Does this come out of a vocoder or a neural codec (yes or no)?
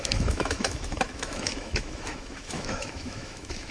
yes